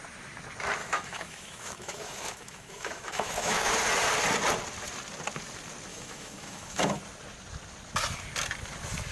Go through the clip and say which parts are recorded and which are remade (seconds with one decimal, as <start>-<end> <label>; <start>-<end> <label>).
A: 0.0-0.8 recorded; 0.8-3.7 remade; 3.7-5.9 recorded; 5.9-7.0 remade; 7.0-9.1 recorded